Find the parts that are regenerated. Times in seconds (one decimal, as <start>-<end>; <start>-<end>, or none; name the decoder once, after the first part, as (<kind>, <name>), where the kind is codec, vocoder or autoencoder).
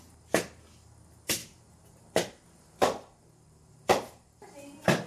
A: 1.4-4.5 (vocoder, BigVGAN v2)